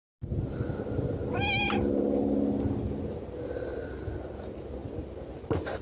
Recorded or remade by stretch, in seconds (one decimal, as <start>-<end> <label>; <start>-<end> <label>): 0.0-5.8 recorded

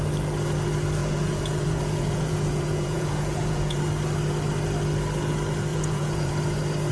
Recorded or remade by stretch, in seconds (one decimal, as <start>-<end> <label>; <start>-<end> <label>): 0.0-1.0 recorded; 1.0-3.8 remade; 3.8-5.7 recorded; 5.7-6.3 remade; 6.3-6.9 recorded

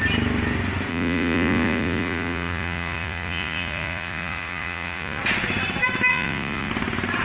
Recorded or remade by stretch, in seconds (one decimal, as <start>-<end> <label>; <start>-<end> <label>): 0.0-0.9 recorded; 0.9-5.2 remade; 5.2-6.1 recorded; 6.1-6.7 remade; 6.7-7.2 recorded

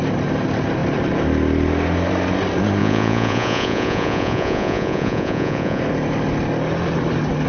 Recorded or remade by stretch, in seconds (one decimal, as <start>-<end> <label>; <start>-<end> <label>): 0.0-2.8 recorded; 2.8-5.8 remade; 5.8-7.5 recorded

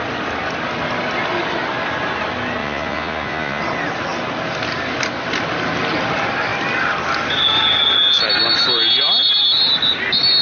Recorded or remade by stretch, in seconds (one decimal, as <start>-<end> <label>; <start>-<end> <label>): 0.0-2.6 recorded; 2.6-3.6 remade; 3.6-10.4 recorded

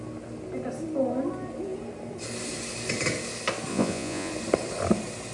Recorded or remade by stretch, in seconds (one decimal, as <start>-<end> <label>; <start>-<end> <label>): 0.0-3.7 recorded; 3.7-4.3 remade; 4.3-5.3 recorded

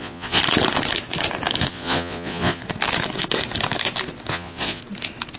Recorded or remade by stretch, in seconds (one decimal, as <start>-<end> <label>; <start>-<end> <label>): 0.0-0.4 remade; 0.4-1.7 recorded; 1.7-2.6 remade; 2.6-4.3 recorded; 4.3-4.8 remade; 4.8-5.4 recorded